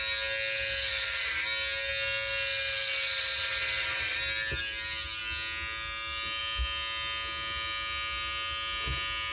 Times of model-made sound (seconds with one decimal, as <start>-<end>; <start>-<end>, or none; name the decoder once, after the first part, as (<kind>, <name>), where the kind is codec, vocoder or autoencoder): none